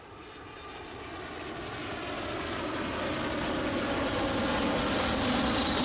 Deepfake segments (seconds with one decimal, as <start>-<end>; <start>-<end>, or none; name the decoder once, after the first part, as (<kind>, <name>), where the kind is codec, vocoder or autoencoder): none